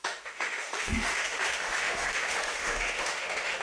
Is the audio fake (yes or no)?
yes